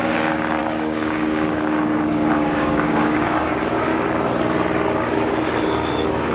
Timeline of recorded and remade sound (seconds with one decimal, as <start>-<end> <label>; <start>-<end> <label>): 0.0-3.9 remade; 3.9-5.0 recorded; 5.0-6.3 remade